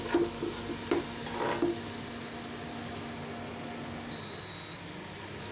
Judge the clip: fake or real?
real